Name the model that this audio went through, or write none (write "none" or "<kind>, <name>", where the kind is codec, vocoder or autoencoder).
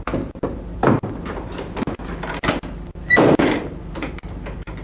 none